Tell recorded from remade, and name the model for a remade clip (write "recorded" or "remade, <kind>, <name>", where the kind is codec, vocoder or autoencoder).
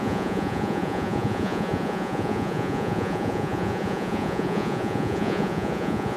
remade, vocoder, Vocos